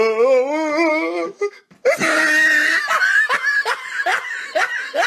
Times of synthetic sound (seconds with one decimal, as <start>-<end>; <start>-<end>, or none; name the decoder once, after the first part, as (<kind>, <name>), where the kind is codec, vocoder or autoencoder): 0.9-1.7 (autoencoder, DAC-VAE)